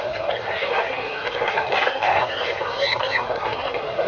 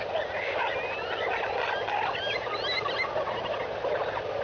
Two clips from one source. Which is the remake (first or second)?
first